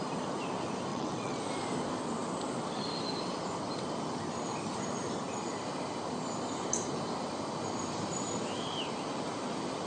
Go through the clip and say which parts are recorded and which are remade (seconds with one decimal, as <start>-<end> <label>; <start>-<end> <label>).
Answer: 0.0-0.9 recorded; 0.9-1.4 remade; 1.4-9.9 recorded

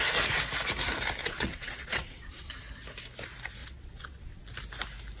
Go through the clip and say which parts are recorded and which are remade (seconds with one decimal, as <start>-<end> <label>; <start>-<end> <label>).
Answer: 0.0-1.2 recorded; 1.2-2.5 remade; 2.5-3.6 recorded; 3.6-4.4 remade; 4.4-5.2 recorded